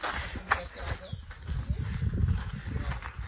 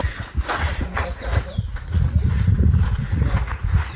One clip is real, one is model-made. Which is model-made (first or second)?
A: second